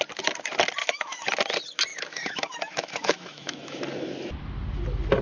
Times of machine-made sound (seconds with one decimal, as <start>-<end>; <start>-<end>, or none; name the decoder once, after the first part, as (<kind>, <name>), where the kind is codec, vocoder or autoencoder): 0.8-1.3 (autoencoder, DAC-VAE); 1.9-3.8